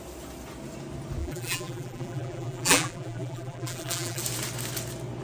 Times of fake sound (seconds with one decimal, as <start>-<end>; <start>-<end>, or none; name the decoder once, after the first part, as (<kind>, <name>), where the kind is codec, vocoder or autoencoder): 1.2-4.2 (vocoder, BigVGAN v2)